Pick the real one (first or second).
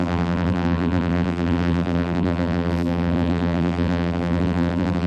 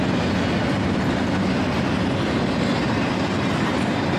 second